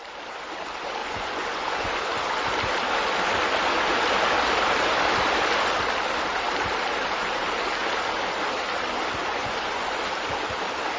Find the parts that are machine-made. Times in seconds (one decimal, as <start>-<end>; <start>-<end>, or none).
1.0-2.1; 9.2-10.0

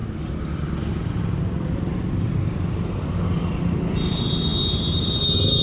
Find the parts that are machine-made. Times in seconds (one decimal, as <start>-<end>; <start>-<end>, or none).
none